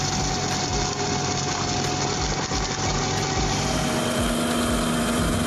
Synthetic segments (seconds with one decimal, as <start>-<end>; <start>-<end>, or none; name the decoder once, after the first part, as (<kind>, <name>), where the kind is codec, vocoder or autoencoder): none